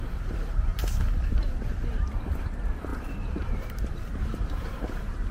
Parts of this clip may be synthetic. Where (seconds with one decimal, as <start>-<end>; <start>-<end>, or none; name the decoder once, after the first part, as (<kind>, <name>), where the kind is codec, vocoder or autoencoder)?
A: 0.0-0.7 (vocoder, BigVGAN v2); 1.3-5.3